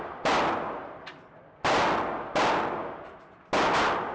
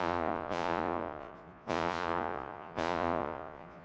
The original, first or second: first